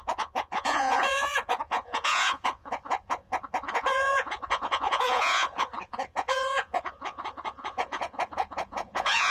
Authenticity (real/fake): fake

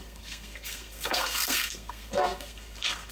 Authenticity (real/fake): fake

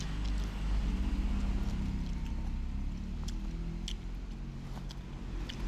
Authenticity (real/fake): real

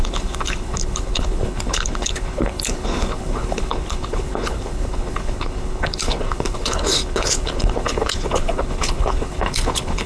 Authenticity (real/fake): fake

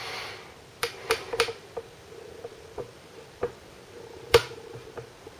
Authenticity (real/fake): fake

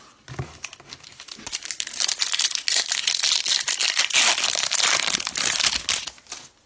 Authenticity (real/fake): real